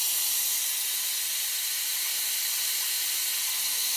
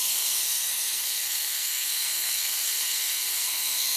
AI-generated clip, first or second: second